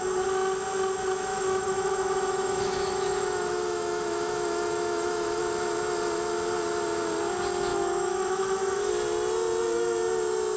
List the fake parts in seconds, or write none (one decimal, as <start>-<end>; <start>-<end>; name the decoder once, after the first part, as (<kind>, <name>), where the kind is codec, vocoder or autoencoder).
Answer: 1.3-5.4 (autoencoder, DAC-VAE); 7.7-8.9